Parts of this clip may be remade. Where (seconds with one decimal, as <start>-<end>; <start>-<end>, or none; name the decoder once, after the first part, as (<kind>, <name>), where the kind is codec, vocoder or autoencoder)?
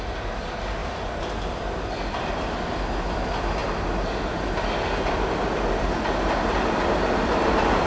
none